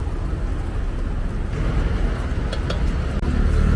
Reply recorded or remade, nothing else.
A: recorded